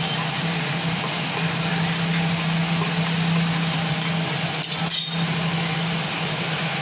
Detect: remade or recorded recorded